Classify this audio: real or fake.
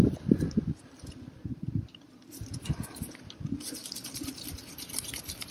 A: real